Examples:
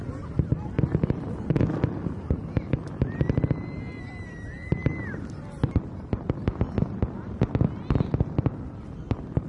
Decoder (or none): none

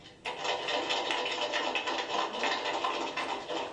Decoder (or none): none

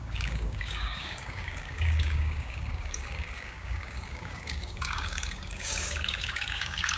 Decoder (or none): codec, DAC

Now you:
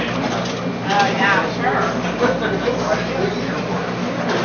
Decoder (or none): none